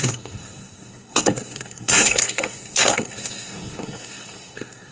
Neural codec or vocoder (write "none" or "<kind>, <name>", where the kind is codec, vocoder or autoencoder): codec, SNAC